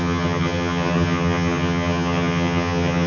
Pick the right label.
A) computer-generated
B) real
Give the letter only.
A